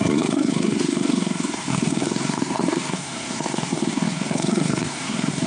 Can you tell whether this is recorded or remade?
remade